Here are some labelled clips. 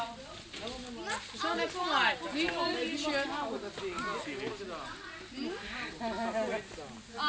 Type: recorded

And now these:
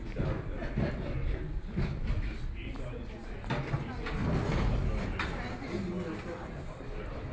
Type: recorded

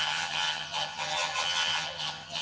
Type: remade